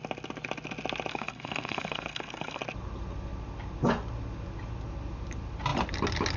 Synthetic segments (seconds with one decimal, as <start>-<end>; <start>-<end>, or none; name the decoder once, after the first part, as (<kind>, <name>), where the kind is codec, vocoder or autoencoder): 1.1-2.6 (codec, SNAC)